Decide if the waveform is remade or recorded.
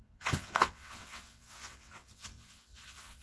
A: remade